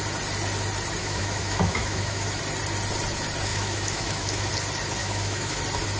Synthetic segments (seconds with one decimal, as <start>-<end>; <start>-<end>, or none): 1.0-2.4; 3.5-4.5; 5.0-5.6